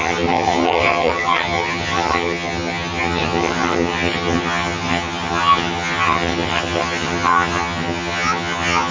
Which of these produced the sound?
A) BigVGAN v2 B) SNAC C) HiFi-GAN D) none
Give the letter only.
C